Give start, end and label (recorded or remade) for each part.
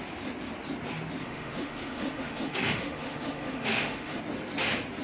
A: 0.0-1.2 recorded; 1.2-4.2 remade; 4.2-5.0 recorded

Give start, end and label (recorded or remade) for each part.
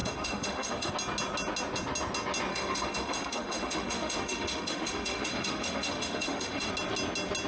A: 0.0-0.9 remade; 0.9-2.5 recorded; 2.5-6.7 remade; 6.7-7.5 recorded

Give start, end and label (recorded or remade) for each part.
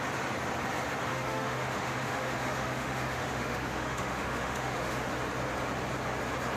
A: 0.0-1.1 recorded; 1.1-5.1 remade; 5.1-6.6 recorded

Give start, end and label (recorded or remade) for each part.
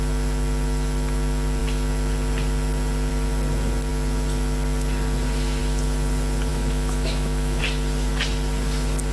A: 0.0-6.5 recorded; 6.5-7.6 remade; 7.6-9.1 recorded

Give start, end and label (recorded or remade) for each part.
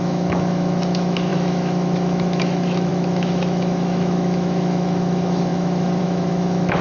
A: 0.0-6.8 remade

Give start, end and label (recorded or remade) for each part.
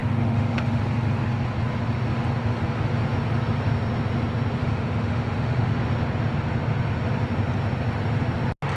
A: 0.0-0.8 remade; 0.8-4.6 recorded; 4.6-5.8 remade; 5.8-8.8 recorded